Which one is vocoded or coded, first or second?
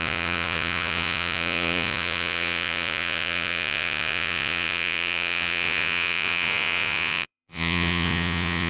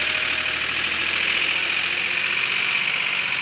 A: first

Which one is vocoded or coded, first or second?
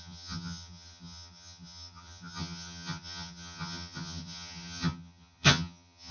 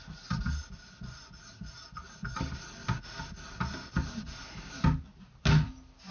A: first